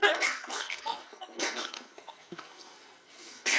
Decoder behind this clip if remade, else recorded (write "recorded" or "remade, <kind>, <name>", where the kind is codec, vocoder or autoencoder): remade, codec, SNAC